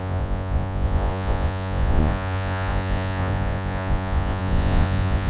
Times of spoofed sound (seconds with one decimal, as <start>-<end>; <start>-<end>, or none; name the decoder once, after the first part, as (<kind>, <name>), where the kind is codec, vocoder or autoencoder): 0.0-5.3 (vocoder, Vocos)